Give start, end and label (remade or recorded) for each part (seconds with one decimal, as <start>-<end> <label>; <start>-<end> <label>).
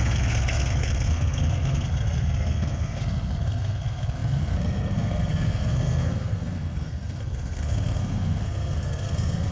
0.0-9.5 remade